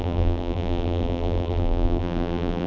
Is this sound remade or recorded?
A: remade